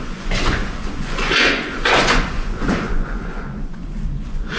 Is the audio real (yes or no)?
no